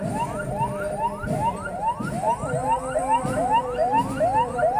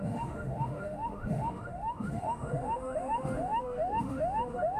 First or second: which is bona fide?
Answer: first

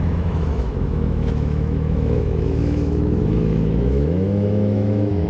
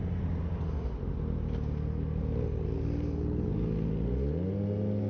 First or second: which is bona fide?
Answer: second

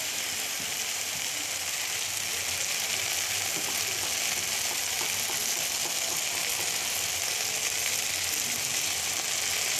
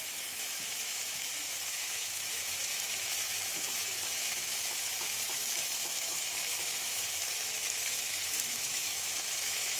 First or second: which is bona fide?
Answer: first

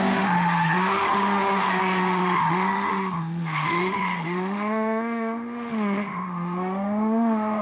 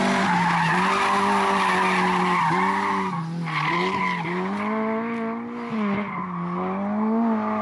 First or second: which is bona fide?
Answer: second